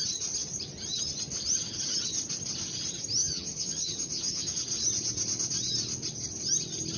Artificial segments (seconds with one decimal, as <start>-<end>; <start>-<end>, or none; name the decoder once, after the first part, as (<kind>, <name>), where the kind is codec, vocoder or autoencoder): 3.2-4.5 (vocoder, HiFi-GAN)